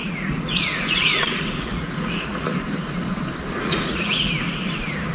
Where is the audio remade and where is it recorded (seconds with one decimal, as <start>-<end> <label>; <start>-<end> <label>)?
0.0-2.6 remade; 2.6-3.6 recorded; 3.6-4.3 remade; 4.3-5.1 recorded